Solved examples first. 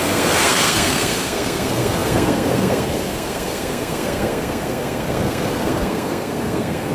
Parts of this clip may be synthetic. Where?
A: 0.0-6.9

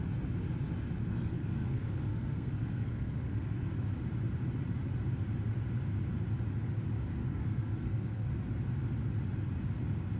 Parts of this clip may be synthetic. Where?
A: 1.0-3.7; 7.3-8.3

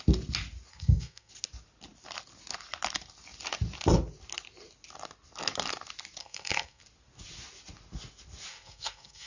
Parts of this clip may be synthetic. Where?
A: 0.7-1.3; 6.2-6.8; 8.5-9.3